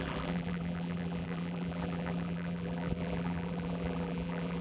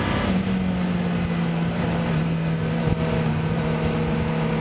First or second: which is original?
second